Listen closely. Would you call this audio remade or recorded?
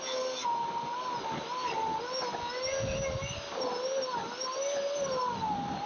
recorded